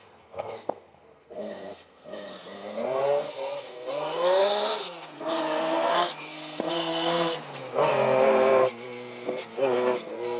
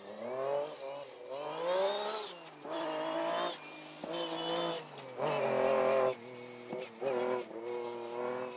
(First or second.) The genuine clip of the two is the second